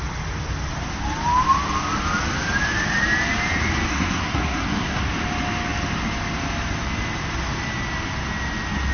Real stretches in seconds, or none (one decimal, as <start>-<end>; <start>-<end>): 0.0-3.9; 5.0-8.9

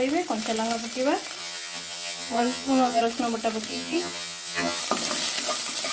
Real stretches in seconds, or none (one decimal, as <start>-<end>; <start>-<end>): 0.0-1.4; 3.0-3.7; 4.8-5.9

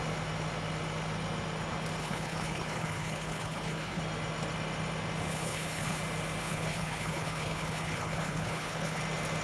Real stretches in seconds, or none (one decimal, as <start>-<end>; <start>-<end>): 0.0-2.0; 4.0-5.3; 6.0-6.4; 9.0-9.4

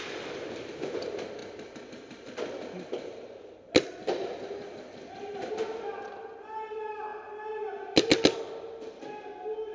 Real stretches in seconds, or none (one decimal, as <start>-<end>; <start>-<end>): 0.0-9.7

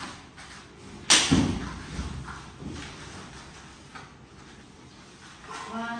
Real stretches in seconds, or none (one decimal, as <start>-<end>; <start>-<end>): 0.0-6.0

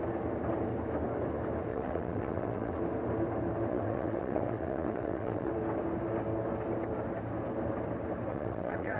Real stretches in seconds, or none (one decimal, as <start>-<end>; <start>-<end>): 0.0-1.7; 2.8-3.7; 5.5-8.3

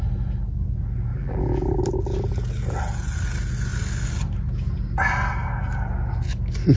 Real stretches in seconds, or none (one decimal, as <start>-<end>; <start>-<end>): 0.0-1.1; 1.8-6.8